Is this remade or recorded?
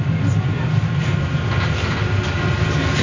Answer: recorded